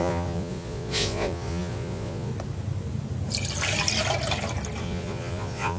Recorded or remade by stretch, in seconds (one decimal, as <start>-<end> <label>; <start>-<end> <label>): 0.0-2.3 remade; 2.3-4.8 recorded; 4.8-5.8 remade